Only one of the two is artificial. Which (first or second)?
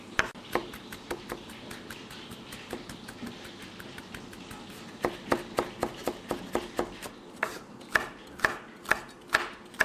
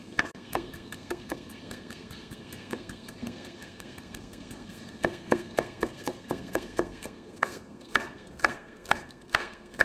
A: second